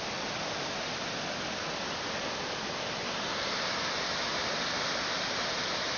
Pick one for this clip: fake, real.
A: real